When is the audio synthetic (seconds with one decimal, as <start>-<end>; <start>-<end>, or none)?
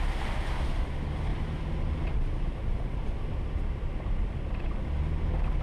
1.3-4.7